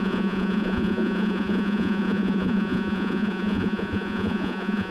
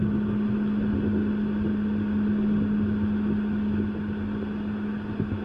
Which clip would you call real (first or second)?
second